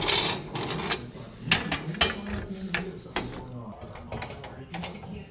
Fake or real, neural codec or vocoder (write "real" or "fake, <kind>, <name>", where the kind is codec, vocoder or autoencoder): real